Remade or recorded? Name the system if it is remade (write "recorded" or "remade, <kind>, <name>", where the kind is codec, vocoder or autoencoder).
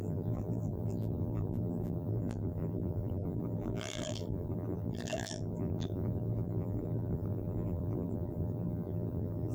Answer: remade, vocoder, BigVGAN v2